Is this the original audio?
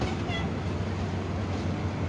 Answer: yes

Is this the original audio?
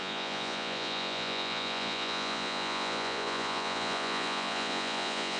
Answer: no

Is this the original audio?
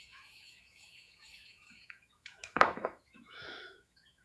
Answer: no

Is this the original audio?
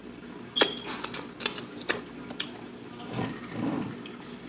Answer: yes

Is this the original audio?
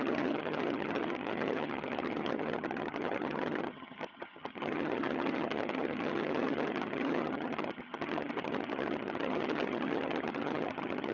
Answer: no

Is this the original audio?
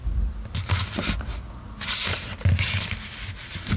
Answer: yes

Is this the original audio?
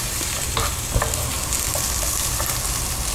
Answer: yes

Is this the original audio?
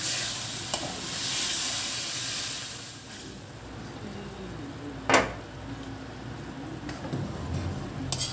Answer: yes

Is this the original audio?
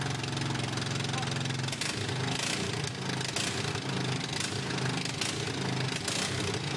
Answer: yes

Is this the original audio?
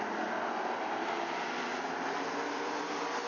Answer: yes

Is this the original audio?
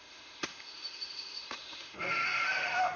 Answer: no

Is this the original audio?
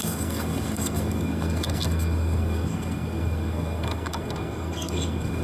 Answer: no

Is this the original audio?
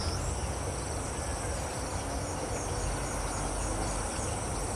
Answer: yes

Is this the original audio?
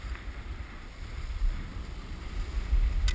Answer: yes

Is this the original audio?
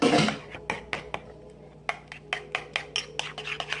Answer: yes